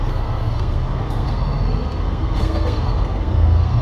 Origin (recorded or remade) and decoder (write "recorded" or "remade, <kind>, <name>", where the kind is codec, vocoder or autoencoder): remade, codec, SNAC